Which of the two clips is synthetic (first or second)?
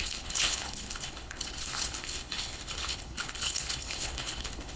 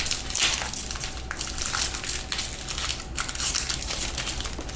first